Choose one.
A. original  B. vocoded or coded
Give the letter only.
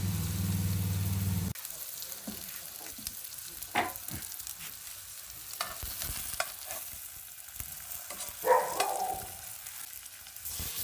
A